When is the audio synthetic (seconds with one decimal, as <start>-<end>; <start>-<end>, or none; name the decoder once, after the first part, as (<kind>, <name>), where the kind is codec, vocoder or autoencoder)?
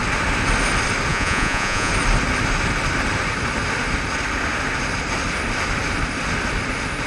1.1-1.9 (vocoder, Vocos)